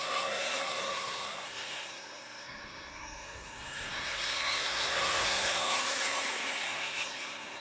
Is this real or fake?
fake